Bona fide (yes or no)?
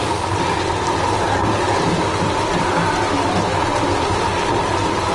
yes